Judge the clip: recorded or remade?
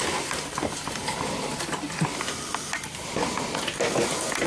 recorded